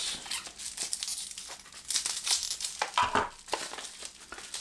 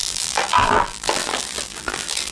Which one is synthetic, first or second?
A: second